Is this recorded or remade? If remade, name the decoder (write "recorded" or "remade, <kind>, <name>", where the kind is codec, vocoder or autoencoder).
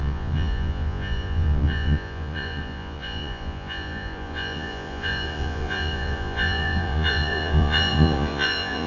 remade, vocoder, Vocos